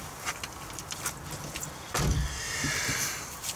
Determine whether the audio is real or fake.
fake